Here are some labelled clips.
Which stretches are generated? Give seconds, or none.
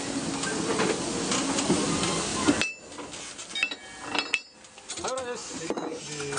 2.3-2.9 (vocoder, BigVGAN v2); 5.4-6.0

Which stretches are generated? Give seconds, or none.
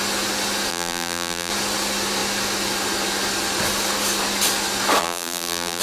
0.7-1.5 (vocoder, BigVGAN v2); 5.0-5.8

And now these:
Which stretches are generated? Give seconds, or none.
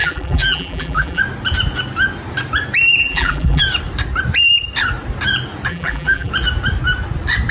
0.0-1.2 (vocoder, BigVGAN v2); 3.0-3.6; 5.7-6.3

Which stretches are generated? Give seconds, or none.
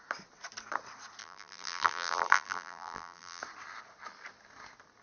1.2-3.4 (vocoder, BigVGAN v2)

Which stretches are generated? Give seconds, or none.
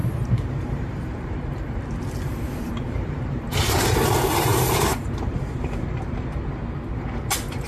0.0-6.6 (vocoder, BigVGAN v2)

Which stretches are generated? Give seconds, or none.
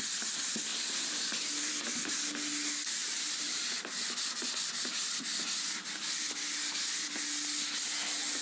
0.7-1.7 (vocoder, BigVGAN v2); 3.0-3.7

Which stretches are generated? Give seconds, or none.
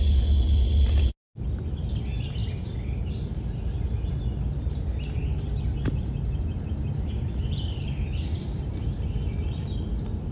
none